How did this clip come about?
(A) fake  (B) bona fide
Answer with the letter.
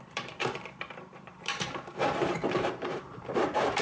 A